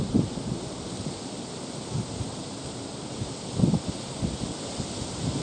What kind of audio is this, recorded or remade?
recorded